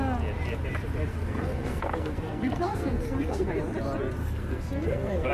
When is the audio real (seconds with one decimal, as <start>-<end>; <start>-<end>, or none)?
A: 0.0-1.1; 3.5-4.2